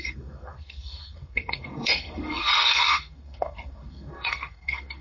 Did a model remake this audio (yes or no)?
yes